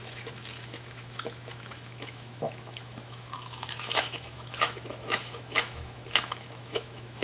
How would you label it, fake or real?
fake